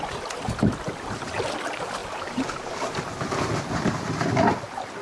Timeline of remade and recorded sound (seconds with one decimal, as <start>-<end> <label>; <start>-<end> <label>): 0.0-5.0 remade